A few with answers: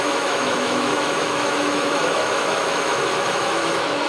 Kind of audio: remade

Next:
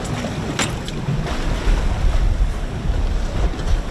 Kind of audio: recorded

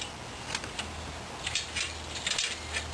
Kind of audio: recorded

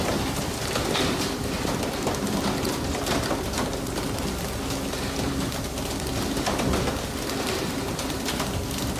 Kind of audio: recorded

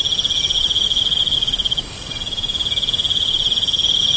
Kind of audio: recorded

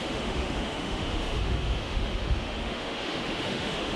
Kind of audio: remade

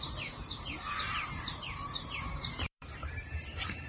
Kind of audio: remade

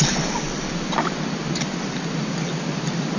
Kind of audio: recorded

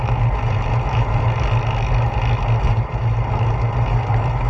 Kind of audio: recorded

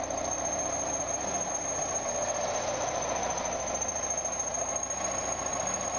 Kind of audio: recorded